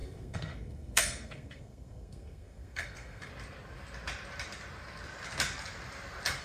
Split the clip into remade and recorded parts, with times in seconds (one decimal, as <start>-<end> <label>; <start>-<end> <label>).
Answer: 0.0-3.3 remade; 3.3-6.4 recorded